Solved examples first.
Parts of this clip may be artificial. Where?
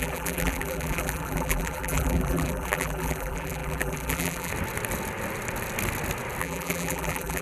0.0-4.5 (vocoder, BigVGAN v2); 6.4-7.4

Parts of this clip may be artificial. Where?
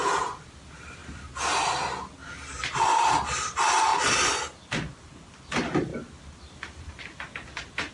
1.0-1.8 (vocoder, BigVGAN v2)